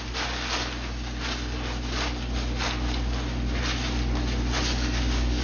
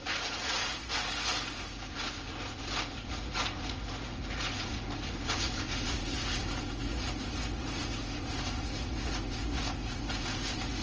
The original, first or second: first